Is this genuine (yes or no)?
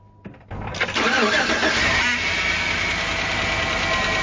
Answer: yes